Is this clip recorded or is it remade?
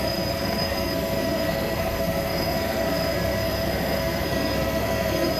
remade